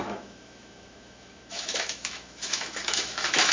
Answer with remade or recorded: remade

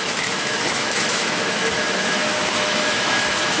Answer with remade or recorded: remade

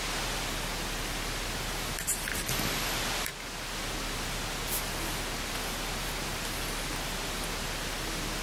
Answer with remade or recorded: recorded